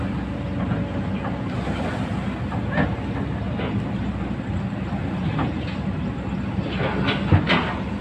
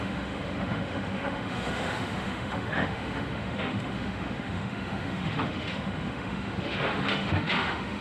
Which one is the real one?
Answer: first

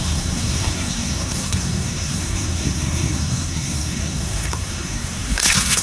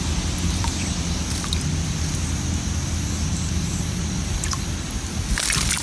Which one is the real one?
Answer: second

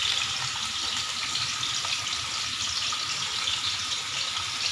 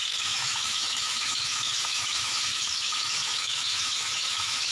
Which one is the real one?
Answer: first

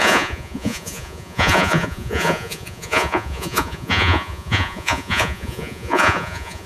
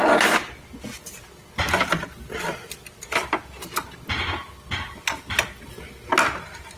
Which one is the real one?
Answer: second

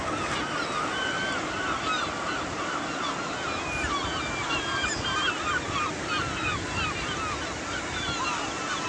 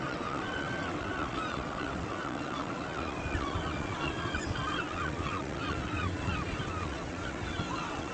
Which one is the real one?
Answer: first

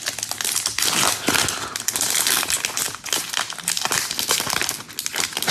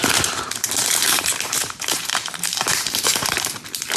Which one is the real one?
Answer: first